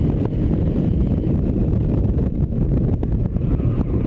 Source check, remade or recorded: recorded